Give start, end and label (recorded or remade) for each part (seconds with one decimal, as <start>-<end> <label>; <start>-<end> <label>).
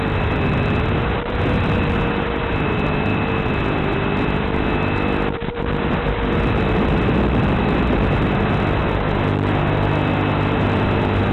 0.0-11.3 recorded